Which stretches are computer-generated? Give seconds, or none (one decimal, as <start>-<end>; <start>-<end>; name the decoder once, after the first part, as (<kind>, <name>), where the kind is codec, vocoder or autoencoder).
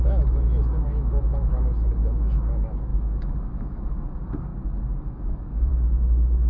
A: 0.0-4.5 (autoencoder, DAC-VAE); 5.0-5.7